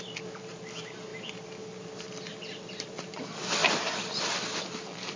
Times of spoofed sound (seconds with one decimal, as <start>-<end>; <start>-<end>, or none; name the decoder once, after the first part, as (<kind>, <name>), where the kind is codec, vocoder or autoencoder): none